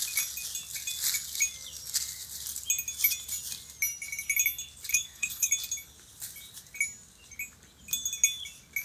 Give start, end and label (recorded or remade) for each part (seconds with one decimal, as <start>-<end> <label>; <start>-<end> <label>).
0.0-4.9 recorded; 4.9-5.5 remade; 5.5-8.8 recorded